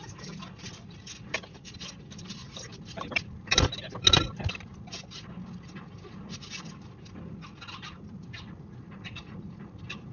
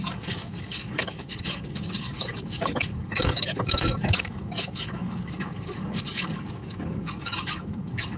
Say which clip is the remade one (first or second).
second